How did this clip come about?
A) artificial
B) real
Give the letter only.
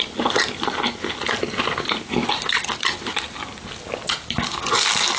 B